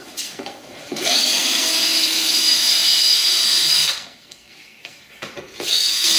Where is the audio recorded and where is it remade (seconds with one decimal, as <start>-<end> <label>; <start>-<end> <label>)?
0.0-6.2 remade